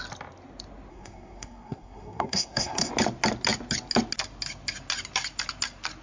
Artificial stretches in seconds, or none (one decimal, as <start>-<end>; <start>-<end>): 0.9-2.9